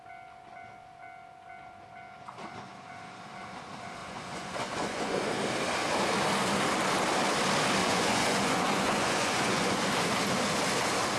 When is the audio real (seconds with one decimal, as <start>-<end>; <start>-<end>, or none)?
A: 0.0-4.0; 5.3-7.8; 9.9-11.2